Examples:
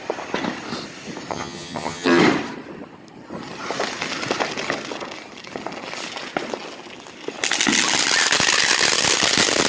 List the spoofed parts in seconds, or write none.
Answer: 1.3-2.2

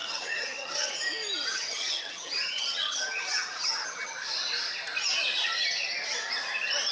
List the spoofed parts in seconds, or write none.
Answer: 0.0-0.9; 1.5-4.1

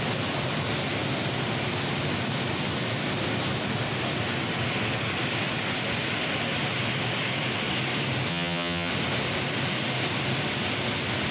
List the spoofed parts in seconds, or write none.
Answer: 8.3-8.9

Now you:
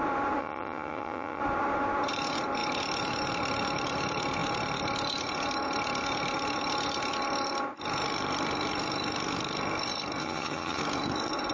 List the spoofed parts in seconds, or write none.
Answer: 0.4-1.4; 10.2-10.8

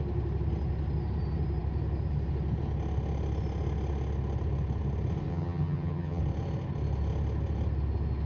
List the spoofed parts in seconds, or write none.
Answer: 5.3-6.2

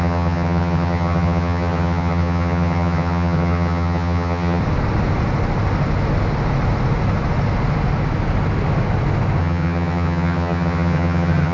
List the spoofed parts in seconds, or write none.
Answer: 0.0-4.6; 9.4-11.5

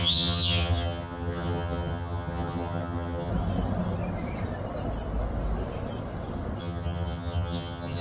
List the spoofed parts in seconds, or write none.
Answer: 0.0-3.3; 6.6-8.0